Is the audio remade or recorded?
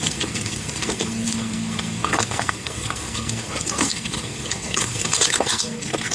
remade